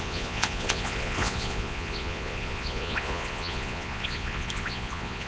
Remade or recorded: remade